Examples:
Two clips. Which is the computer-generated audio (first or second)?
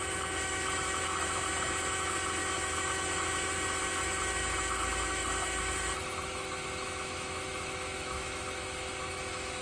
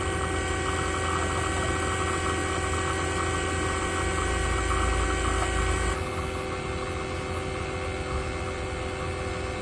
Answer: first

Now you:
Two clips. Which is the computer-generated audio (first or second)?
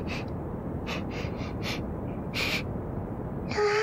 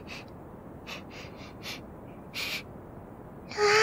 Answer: first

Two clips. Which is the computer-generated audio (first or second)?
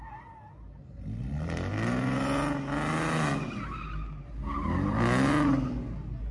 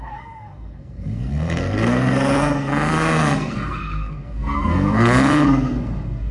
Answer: second